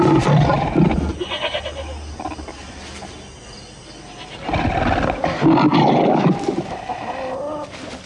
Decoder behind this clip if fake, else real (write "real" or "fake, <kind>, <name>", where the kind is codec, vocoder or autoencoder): real